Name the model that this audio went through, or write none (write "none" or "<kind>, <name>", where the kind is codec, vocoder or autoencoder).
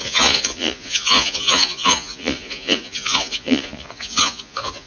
vocoder, Vocos